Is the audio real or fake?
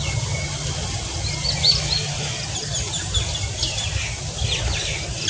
real